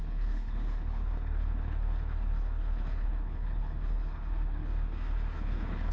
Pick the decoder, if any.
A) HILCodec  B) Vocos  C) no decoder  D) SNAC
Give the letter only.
A